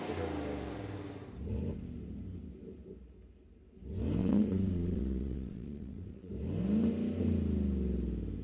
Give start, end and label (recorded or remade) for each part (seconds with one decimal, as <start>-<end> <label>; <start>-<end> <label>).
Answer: 0.0-4.2 recorded; 4.2-6.3 remade; 6.3-8.4 recorded